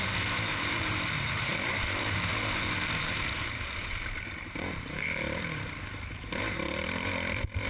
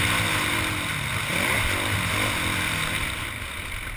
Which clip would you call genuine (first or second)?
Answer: second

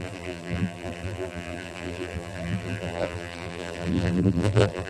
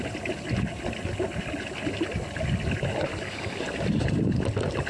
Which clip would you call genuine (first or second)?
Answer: second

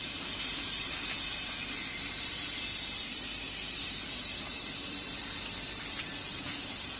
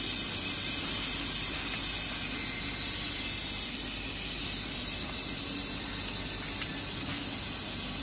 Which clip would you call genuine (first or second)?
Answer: second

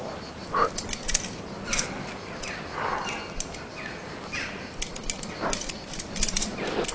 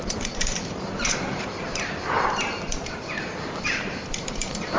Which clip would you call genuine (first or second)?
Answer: first